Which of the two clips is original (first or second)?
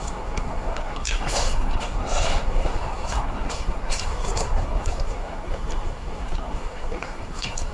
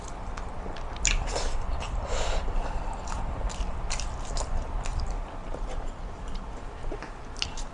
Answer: second